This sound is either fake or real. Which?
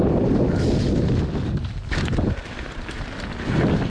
real